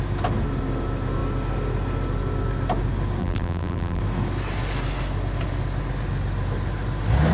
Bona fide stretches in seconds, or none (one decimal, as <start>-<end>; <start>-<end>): 0.0-3.2; 4.0-7.3